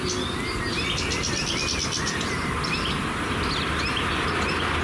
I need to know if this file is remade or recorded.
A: recorded